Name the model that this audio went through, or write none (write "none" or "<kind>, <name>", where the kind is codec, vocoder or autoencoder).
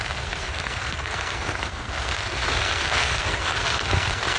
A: codec, SNAC